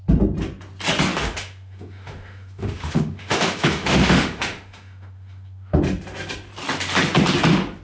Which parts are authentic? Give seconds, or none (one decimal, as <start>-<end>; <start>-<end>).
0.0-1.1; 5.8-7.8